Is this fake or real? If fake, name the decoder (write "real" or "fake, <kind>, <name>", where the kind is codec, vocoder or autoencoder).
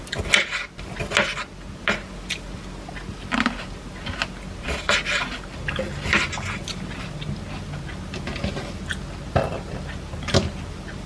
real